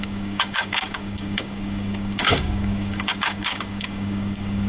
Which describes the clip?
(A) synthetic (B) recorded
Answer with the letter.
A